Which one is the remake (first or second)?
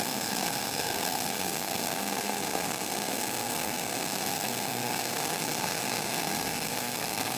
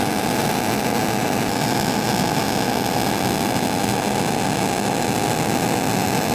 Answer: first